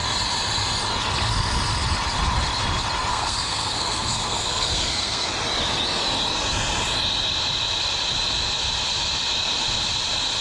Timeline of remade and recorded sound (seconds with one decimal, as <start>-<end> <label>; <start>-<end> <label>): 0.0-3.1 recorded; 3.1-5.3 remade; 5.3-10.4 recorded